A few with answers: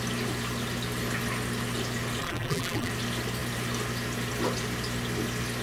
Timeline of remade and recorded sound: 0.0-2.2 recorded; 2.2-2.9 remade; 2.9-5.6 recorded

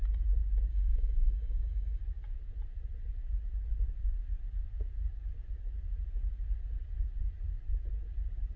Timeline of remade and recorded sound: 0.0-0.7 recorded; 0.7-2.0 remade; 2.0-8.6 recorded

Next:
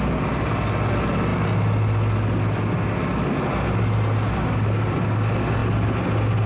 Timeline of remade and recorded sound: 0.0-6.5 recorded

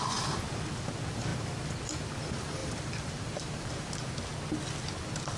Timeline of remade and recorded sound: 0.0-2.6 recorded; 2.6-3.9 remade; 3.9-5.4 recorded

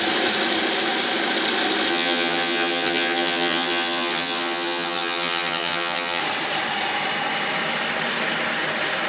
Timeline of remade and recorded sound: 0.0-1.9 recorded; 1.9-6.2 remade; 6.2-9.1 recorded

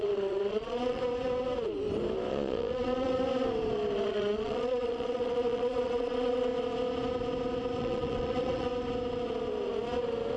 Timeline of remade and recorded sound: 0.0-1.0 remade; 1.0-2.3 recorded; 2.3-3.1 remade; 3.1-4.1 recorded; 4.1-6.5 remade; 6.5-7.8 recorded; 7.8-8.7 remade; 8.7-10.4 recorded

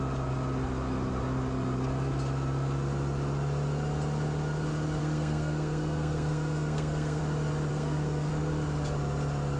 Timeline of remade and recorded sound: 0.0-5.0 recorded; 5.0-7.2 remade; 7.2-7.7 recorded; 7.7-8.3 remade; 8.3-9.6 recorded